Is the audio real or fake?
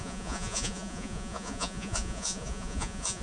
fake